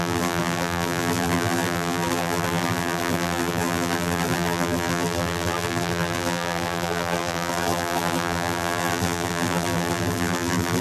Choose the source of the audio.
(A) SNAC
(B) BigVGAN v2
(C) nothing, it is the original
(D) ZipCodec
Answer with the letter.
B